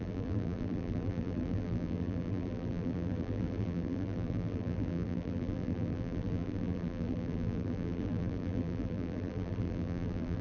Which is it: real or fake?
fake